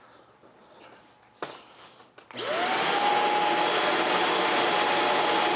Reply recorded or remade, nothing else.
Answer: recorded